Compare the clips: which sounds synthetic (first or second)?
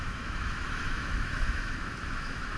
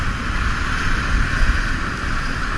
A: first